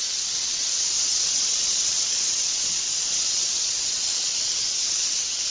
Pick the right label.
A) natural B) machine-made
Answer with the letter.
B